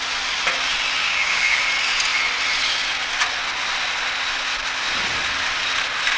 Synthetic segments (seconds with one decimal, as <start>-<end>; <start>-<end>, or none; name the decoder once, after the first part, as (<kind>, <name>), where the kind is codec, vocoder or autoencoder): 1.0-1.6 (codec, DAC)